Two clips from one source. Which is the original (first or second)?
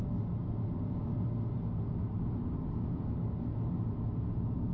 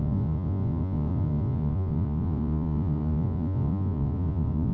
first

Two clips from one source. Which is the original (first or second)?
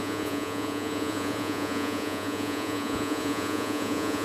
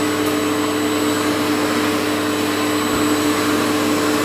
second